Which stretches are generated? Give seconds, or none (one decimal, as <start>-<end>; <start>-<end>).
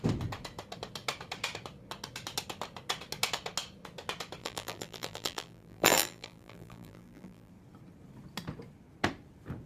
4.4-7.5